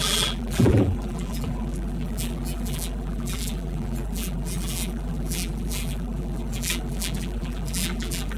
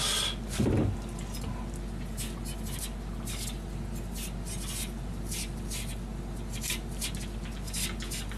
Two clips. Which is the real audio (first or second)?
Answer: second